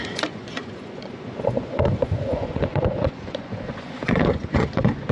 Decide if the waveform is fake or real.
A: fake